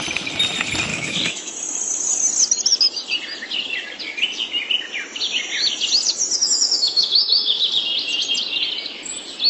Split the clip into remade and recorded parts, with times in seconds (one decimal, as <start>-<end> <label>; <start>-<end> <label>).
0.0-0.9 recorded; 0.9-1.5 remade; 1.5-6.4 recorded; 6.4-7.7 remade; 7.7-9.5 recorded